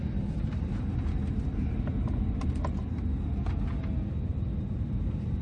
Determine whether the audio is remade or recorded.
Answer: recorded